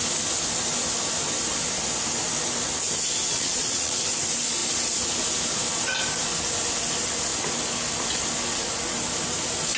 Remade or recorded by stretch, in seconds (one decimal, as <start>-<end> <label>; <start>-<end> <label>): 0.0-3.3 recorded; 3.3-4.0 remade; 4.0-9.8 recorded